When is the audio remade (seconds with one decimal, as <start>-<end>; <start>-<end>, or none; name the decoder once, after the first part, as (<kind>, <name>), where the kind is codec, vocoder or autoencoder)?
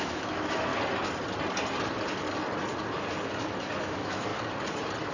0.0-0.7 (autoencoder, DAC-VAE); 3.8-4.3